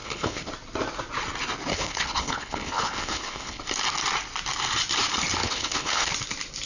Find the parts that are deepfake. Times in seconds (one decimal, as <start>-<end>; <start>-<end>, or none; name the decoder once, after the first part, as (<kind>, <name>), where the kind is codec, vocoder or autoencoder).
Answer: 0.0-0.5 (codec, HILCodec); 1.7-3.6; 5.4-6.1